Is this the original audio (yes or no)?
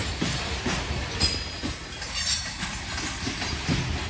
yes